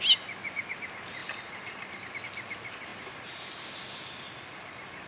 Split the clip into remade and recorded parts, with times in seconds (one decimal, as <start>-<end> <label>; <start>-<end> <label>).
0.0-5.1 recorded